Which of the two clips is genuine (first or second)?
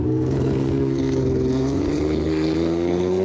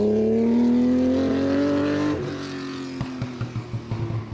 second